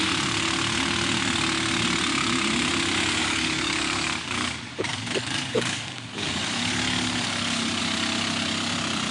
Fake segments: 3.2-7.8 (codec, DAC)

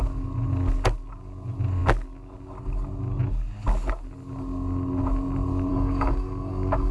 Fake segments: 5.7-6.9 (codec, DAC)

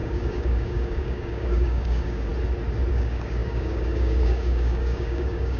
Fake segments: 0.0-2.3 (codec, DAC); 2.9-5.6

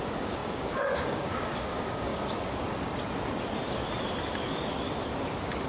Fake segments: 0.0-2.1 (codec, DAC)

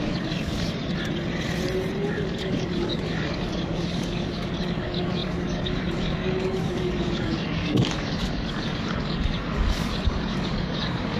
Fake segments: 0.0-0.8 (codec, DAC); 2.1-11.2